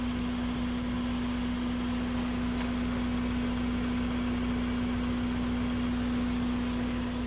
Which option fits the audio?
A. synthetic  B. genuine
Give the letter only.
B